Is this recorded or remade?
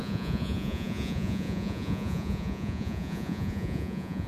remade